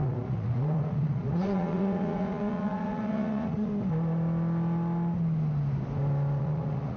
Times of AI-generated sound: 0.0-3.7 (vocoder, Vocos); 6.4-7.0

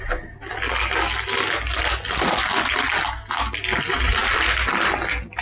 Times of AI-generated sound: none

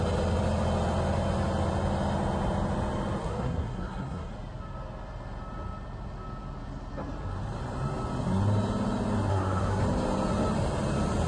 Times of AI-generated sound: 3.2-4.3 (codec, SNAC); 9.3-9.8

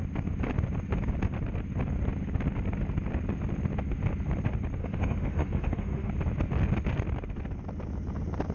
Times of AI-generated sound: 4.8-6.1 (autoencoder, DAC-VAE)